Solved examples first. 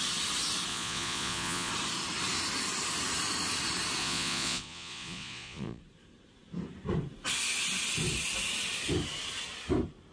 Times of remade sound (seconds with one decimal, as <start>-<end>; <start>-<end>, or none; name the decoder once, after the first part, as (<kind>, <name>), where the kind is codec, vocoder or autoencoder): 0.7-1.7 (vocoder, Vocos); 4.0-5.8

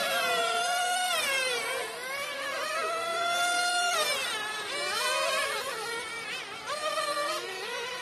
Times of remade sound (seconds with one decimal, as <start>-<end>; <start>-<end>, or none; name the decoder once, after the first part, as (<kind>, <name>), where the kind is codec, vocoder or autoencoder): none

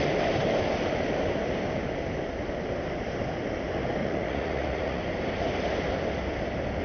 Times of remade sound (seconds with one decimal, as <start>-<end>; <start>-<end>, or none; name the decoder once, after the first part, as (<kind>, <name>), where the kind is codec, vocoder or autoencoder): 4.0-5.0 (vocoder, Vocos)